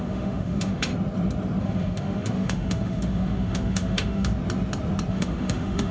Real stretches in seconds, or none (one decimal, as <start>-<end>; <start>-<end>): 0.9-1.6; 4.3-5.1